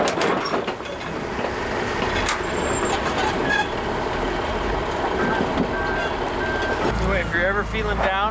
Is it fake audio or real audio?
real